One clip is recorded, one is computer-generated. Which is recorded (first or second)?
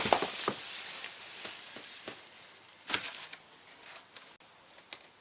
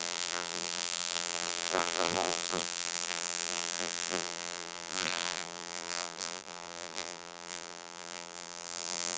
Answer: first